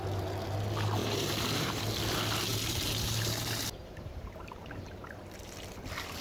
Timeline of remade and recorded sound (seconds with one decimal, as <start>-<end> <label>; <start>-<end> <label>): 0.0-1.0 recorded; 1.0-1.8 remade; 1.8-2.5 recorded; 2.5-5.1 remade; 5.1-6.2 recorded